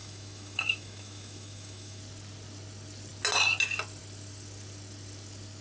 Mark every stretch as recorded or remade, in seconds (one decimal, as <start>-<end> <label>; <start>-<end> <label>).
0.0-2.0 remade; 2.0-5.6 recorded